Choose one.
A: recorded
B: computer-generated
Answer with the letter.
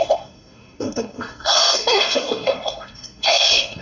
B